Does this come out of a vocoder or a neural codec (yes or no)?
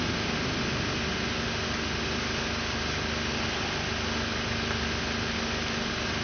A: no